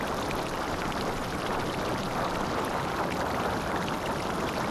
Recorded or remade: recorded